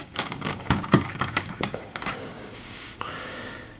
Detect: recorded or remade remade